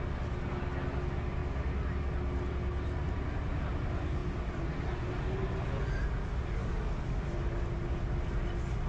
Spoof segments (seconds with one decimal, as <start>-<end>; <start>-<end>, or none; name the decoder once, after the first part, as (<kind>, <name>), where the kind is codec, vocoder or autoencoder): 6.6-7.4 (codec, DAC)